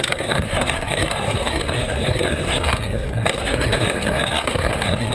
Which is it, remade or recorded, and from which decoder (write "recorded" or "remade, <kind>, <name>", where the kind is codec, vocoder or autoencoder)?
remade, codec, SNAC